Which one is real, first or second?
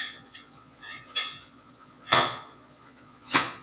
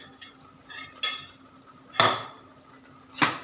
second